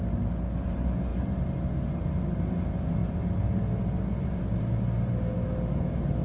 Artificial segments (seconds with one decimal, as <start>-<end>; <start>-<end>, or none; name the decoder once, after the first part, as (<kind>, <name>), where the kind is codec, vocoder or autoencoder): none